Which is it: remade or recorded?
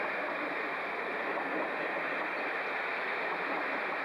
recorded